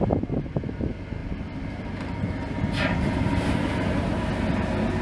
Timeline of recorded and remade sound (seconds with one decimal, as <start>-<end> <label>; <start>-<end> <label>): 0.0-5.0 recorded